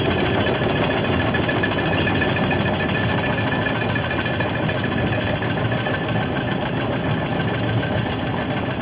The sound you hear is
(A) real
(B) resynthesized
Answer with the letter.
A